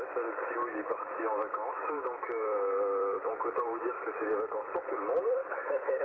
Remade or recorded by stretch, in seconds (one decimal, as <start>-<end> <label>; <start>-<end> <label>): 0.0-0.7 recorded; 0.7-4.3 remade; 4.3-5.4 recorded; 5.4-6.0 remade